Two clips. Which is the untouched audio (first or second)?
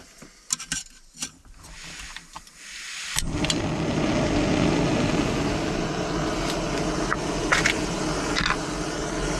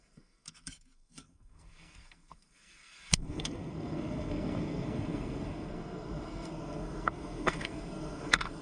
first